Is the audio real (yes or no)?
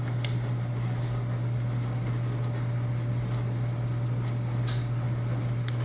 yes